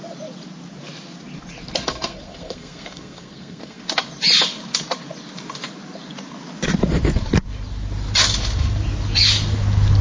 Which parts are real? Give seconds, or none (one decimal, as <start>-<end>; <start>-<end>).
0.0-1.8; 3.8-10.0